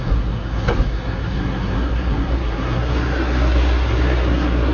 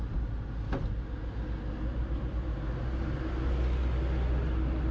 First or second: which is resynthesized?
first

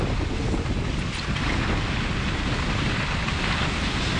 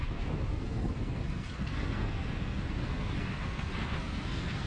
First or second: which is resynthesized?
second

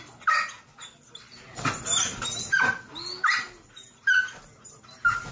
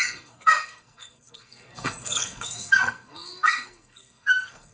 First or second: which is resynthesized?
second